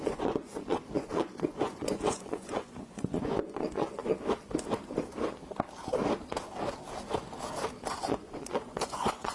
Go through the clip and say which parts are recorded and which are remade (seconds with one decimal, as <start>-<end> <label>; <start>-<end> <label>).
0.0-4.0 remade; 4.0-7.9 recorded; 7.9-9.3 remade